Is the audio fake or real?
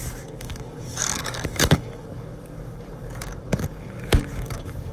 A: fake